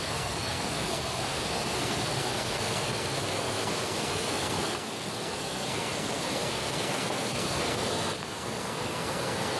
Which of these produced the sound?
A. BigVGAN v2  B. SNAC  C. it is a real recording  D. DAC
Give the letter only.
B